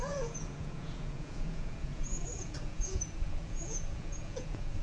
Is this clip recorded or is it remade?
remade